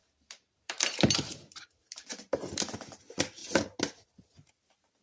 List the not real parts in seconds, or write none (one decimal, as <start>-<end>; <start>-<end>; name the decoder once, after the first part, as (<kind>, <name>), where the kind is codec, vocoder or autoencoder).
0.0-3.0 (vocoder, BigVGAN v2)